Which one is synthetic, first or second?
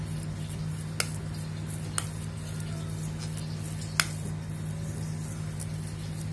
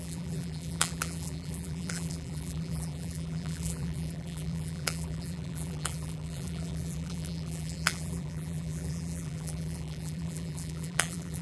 second